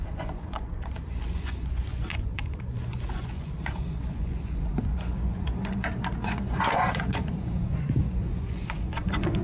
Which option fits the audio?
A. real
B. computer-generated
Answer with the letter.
B